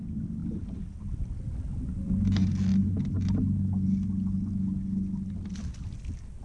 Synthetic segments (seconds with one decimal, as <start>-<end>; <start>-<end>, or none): none